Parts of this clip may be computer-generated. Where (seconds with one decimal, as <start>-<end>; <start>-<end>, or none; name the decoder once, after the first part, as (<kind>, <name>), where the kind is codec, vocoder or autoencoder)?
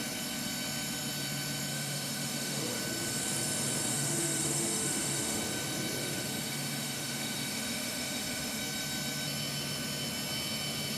1.7-2.8 (autoencoder, DAC-VAE); 3.9-5.4; 6.0-8.6